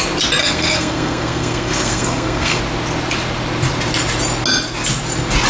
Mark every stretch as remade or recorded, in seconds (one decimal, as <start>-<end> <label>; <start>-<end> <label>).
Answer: 0.0-0.4 recorded; 0.4-2.6 remade; 2.6-5.5 recorded